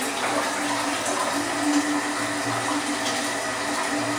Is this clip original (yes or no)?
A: yes